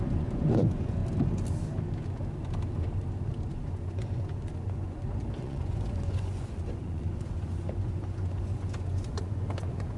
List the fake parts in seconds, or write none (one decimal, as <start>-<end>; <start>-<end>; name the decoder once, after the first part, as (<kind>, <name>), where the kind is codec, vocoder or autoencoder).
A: 0.0-1.0 (vocoder, Vocos); 3.5-10.0